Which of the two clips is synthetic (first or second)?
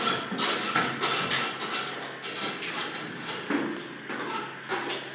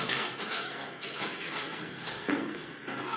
second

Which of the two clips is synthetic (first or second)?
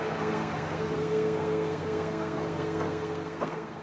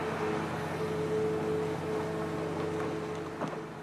first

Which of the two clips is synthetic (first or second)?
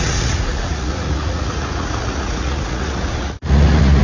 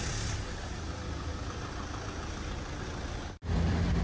first